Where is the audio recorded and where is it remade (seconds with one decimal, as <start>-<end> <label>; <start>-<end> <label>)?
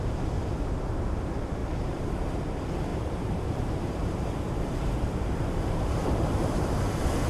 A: 0.0-1.6 recorded; 1.6-2.1 remade; 2.1-2.9 recorded; 2.9-6.8 remade; 6.8-7.3 recorded